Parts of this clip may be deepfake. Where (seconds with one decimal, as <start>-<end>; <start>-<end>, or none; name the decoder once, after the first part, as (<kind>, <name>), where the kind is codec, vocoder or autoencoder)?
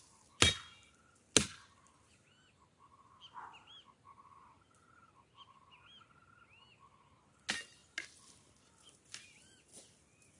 none